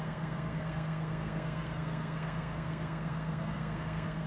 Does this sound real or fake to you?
fake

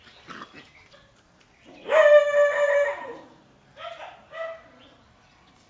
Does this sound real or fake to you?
real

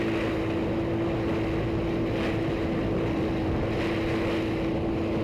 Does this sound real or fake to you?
real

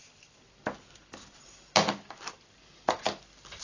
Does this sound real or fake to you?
real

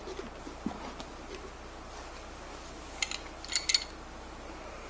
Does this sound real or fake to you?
real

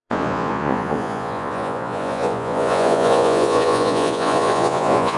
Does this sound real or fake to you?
fake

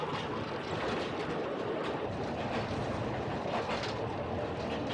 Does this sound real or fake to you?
fake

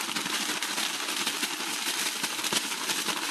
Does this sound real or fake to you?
real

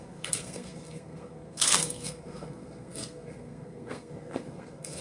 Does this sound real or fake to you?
fake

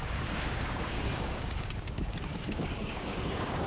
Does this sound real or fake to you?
fake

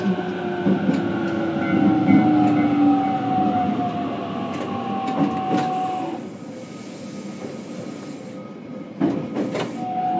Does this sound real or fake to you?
real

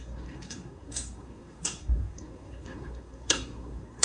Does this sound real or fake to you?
fake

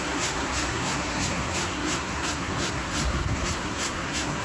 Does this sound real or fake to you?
fake